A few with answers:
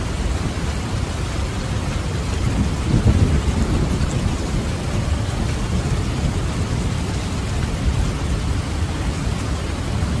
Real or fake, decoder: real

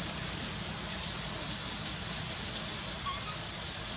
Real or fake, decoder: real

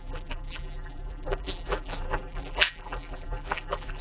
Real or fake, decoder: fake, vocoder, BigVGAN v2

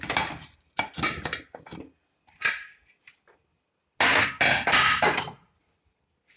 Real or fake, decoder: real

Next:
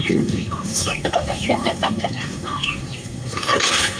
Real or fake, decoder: fake, codec, SNAC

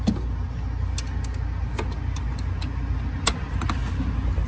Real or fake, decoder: real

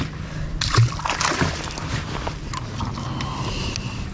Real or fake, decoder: real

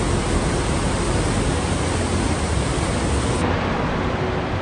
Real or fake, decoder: real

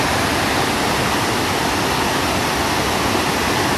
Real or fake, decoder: real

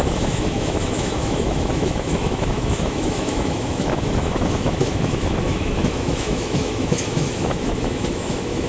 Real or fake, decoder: fake, autoencoder, DAC-VAE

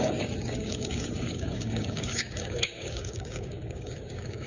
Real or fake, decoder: fake, codec, DAC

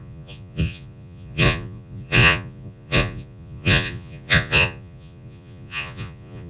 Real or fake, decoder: fake, vocoder, Vocos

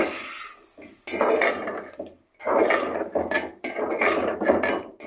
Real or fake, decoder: real